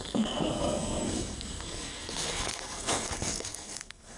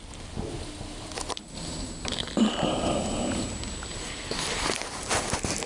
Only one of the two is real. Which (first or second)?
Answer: second